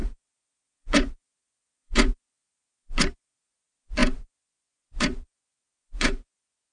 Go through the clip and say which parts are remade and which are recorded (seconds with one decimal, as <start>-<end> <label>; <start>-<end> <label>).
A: 0.0-6.7 remade